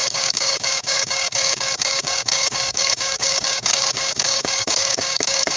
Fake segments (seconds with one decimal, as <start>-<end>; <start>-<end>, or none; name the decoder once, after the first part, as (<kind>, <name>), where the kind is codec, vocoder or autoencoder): 0.0-5.6 (codec, DAC)